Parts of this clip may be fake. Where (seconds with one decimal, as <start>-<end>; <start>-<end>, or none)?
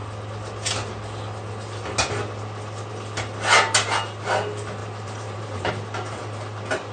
4.8-5.7